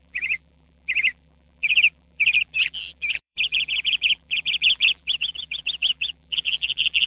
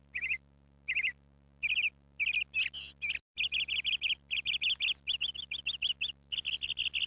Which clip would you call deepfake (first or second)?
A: first